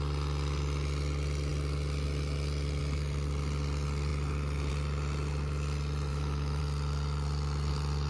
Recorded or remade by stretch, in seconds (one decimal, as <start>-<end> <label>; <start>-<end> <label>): 0.0-6.1 recorded; 6.1-6.6 remade; 6.6-8.1 recorded

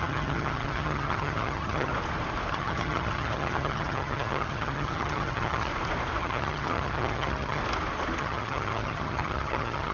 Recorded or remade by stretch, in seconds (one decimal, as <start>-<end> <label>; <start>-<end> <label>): 0.0-1.9 remade; 1.9-2.5 recorded; 2.5-5.7 remade; 5.7-6.2 recorded; 6.2-7.6 remade; 7.6-8.2 recorded; 8.2-9.9 remade